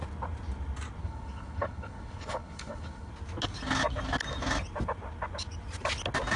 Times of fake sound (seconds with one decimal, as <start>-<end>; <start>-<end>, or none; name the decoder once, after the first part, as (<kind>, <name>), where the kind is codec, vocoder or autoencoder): 1.0-3.1 (codec, HILCodec)